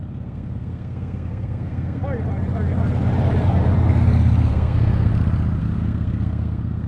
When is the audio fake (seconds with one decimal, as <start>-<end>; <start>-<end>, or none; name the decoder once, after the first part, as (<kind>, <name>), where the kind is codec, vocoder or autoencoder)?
0.0-2.0 (codec, SNAC); 4.5-5.1; 5.6-6.9